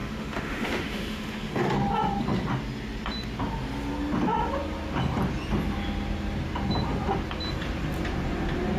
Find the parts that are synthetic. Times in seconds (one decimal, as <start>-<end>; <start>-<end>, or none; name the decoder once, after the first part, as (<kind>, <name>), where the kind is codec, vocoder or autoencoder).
0.0-1.7 (autoencoder, DAC-VAE)